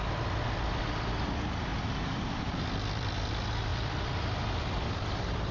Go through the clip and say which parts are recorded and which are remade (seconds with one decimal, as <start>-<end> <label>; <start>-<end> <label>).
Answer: 0.0-1.7 recorded; 1.7-3.2 remade; 3.2-3.7 recorded; 3.7-4.9 remade; 4.9-5.5 recorded